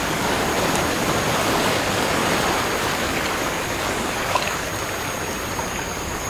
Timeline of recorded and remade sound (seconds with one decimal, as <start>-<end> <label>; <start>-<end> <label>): 0.0-0.5 remade; 0.5-1.5 recorded; 1.5-2.2 remade; 2.2-2.8 recorded; 2.8-4.7 remade; 4.7-5.6 recorded; 5.6-6.3 remade